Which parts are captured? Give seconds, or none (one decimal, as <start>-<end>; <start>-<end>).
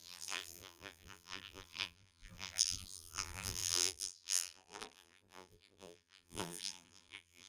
none